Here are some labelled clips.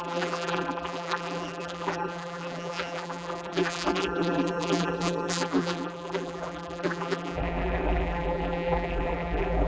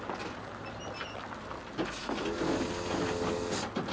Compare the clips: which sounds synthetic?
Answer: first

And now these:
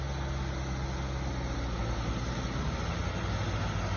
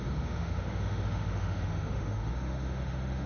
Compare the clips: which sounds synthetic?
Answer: second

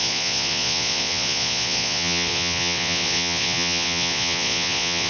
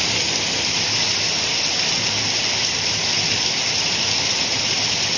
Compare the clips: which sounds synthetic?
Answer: first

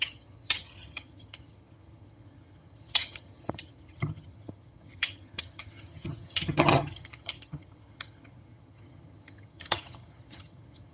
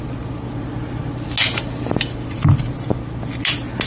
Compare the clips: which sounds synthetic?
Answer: first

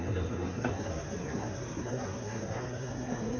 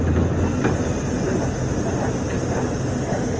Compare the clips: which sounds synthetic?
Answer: first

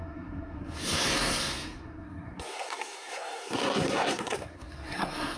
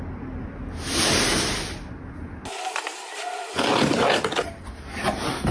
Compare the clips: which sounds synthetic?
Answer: first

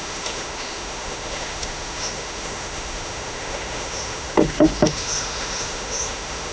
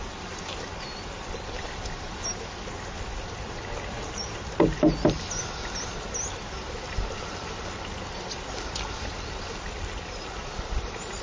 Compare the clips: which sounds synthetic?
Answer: first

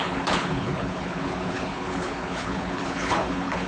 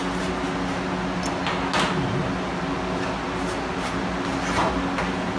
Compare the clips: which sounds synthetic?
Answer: first